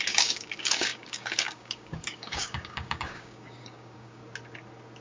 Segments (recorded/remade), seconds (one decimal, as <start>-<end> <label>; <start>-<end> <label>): 0.0-4.2 remade; 4.2-5.0 recorded